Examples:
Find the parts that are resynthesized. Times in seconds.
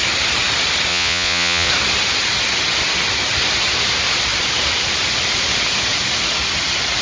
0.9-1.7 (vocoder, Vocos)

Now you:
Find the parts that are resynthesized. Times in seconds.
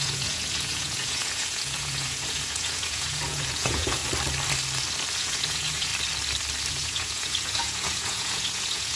0.0-4.0 (vocoder, Vocos); 5.1-5.9; 6.7-9.0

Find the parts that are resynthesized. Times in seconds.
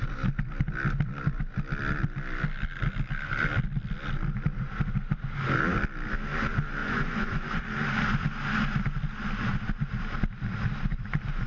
6.8-7.6 (vocoder, Vocos)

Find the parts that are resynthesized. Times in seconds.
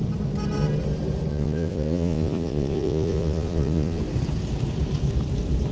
1.3-4.0 (vocoder, Vocos)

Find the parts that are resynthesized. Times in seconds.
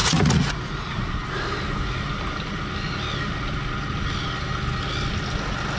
0.0-1.1 (vocoder, Vocos)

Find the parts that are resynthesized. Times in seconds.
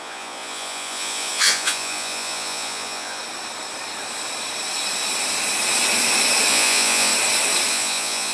0.0-3.2 (vocoder, Vocos); 6.5-7.1; 7.7-8.3